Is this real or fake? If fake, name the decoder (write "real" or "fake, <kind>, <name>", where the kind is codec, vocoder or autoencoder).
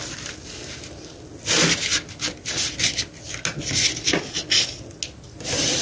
real